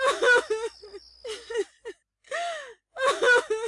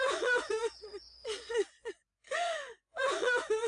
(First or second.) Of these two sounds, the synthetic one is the second